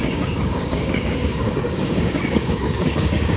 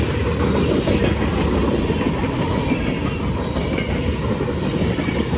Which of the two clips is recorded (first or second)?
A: second